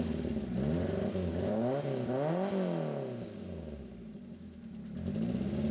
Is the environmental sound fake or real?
real